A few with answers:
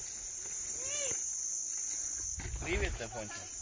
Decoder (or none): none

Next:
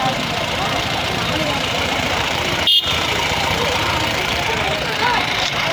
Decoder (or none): vocoder, BigVGAN v2